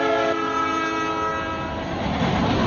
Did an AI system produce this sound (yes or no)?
no